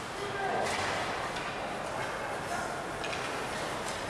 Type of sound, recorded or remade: recorded